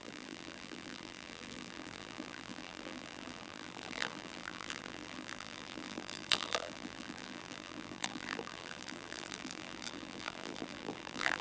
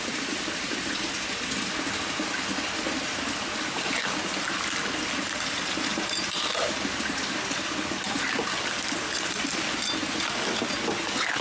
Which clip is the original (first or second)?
second